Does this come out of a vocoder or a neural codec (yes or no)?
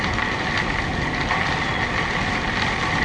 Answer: no